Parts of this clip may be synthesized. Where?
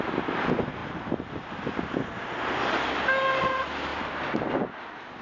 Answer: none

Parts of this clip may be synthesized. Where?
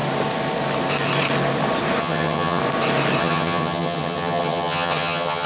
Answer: 2.0-2.6 (vocoder, HiFi-GAN); 3.2-5.5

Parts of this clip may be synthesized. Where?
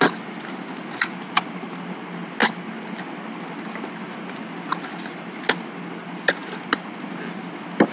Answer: none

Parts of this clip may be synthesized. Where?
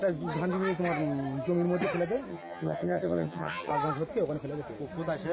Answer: 2.3-3.7 (vocoder, HiFi-GAN)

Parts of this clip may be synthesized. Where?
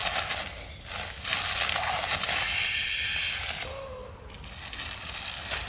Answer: none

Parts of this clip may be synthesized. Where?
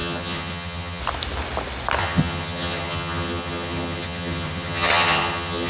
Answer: 0.0-1.0 (vocoder, HiFi-GAN); 2.0-5.7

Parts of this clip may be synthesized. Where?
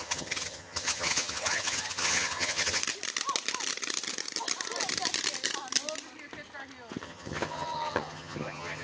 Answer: 0.0-2.8 (vocoder, HiFi-GAN); 7.0-8.8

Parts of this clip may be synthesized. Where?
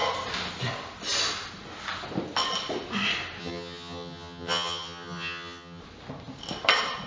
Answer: 3.4-5.8 (vocoder, HiFi-GAN)